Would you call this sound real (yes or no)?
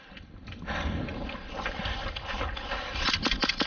yes